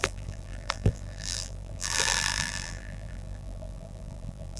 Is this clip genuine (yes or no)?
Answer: no